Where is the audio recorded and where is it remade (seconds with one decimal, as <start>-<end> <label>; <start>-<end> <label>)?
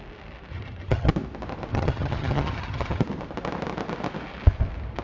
0.0-0.5 recorded; 0.5-1.1 remade; 1.1-1.7 recorded; 1.7-3.0 remade; 3.0-5.0 recorded